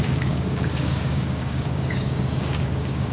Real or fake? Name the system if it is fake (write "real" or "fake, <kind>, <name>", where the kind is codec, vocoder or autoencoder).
fake, codec, DAC